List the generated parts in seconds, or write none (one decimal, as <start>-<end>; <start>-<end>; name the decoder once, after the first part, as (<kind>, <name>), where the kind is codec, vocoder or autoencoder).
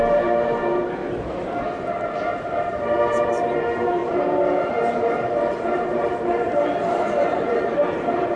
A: 0.0-1.0 (vocoder, BigVGAN v2); 2.6-4.0; 5.5-8.4